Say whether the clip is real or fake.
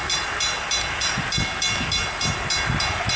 real